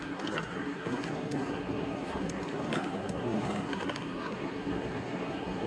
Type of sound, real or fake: fake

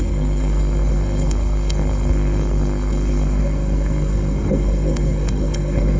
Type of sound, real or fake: fake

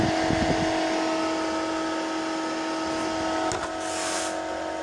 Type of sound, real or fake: real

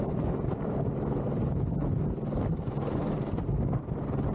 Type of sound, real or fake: real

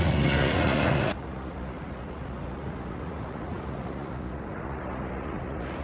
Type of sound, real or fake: fake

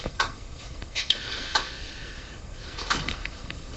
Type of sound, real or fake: fake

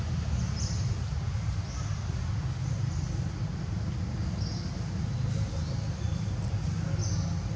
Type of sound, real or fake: real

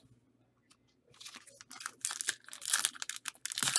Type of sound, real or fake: real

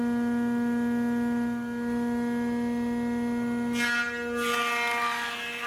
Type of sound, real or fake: real